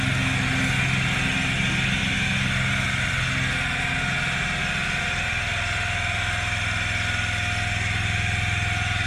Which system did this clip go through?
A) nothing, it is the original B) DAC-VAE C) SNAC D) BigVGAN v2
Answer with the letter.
A